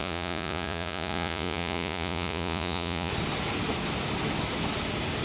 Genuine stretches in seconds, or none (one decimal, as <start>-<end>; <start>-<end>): 3.1-5.2